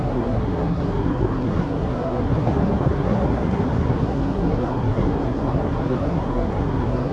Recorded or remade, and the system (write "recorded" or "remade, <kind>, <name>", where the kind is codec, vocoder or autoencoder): remade, codec, SNAC